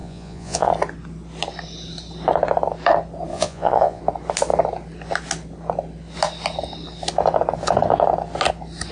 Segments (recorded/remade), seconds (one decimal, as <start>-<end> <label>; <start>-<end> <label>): 0.0-0.7 remade; 0.7-3.3 recorded; 3.3-4.0 remade; 4.0-8.9 recorded